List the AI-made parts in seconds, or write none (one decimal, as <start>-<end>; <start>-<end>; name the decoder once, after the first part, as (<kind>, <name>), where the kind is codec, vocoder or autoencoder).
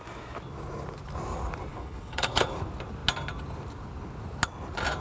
1.7-2.6 (codec, HILCodec)